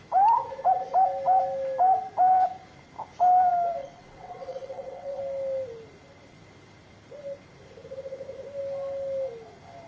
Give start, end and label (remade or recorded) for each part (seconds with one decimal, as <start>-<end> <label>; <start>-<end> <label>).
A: 0.0-3.8 recorded; 3.8-5.2 remade; 5.2-9.9 recorded